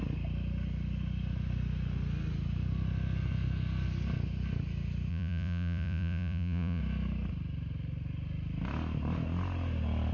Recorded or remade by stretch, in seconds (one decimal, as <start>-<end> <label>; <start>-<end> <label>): 0.0-5.1 recorded; 5.1-6.8 remade; 6.8-10.1 recorded

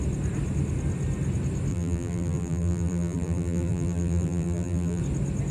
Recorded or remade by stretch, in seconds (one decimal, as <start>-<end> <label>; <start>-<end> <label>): 0.0-1.7 recorded; 1.7-5.0 remade; 5.0-5.5 recorded

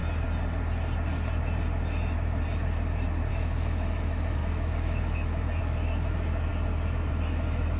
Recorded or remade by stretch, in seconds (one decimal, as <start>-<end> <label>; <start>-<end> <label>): 0.0-3.3 recorded; 3.3-6.5 remade; 6.5-7.1 recorded; 7.1-7.8 remade